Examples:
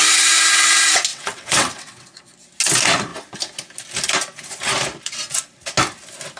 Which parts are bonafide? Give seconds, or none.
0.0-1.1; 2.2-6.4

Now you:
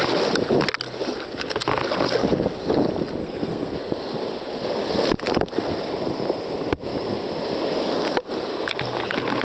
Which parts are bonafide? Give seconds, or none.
0.0-3.2; 3.7-9.4

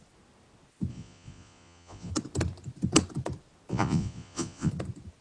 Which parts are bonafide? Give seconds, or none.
0.0-0.9; 2.1-3.7; 4.7-5.2

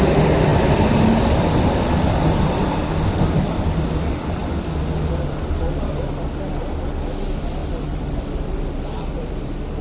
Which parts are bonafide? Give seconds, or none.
0.0-9.8

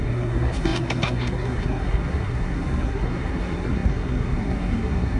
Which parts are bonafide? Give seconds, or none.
none

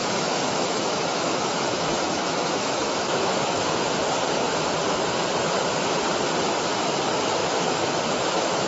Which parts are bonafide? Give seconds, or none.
3.8-7.4; 8.0-8.7

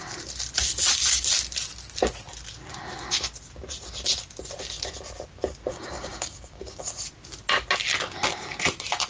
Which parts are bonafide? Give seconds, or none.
0.0-5.7; 6.8-9.1